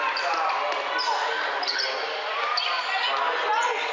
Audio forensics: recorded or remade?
recorded